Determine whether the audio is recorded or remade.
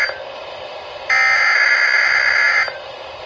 recorded